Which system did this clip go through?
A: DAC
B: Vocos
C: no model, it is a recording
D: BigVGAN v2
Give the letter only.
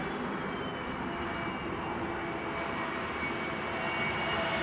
C